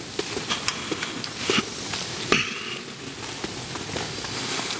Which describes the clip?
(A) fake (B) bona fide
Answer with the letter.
B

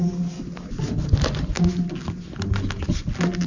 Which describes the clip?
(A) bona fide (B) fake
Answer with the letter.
A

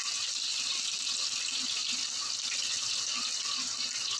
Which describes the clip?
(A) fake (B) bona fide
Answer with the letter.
B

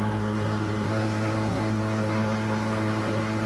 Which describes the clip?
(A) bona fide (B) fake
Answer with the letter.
B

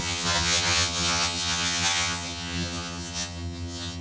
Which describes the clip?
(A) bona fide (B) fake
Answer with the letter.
B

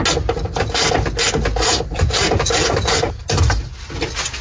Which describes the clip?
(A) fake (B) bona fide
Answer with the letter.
B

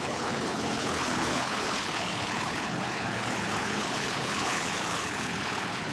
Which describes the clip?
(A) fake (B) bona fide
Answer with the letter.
A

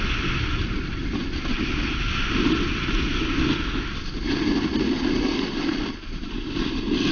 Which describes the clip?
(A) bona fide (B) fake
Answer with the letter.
A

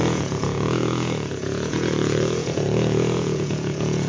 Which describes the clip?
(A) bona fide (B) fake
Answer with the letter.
B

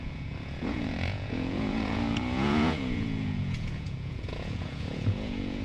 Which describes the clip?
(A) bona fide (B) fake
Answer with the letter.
B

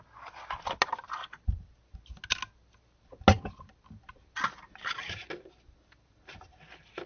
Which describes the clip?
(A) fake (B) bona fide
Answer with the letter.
B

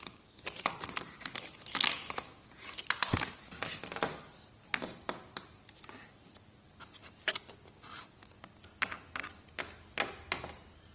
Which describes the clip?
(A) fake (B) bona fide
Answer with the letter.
B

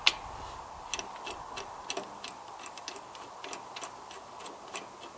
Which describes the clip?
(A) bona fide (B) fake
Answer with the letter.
A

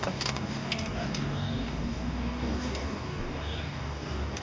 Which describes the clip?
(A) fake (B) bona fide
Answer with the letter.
A